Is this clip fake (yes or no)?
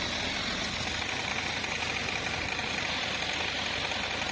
no